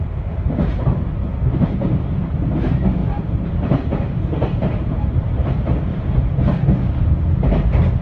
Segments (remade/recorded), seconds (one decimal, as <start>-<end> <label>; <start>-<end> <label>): 0.0-3.0 recorded; 3.0-5.9 remade; 5.9-8.0 recorded